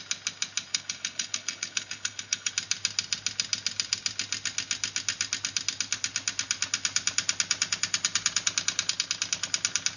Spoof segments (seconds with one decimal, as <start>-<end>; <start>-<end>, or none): 0.7-2.5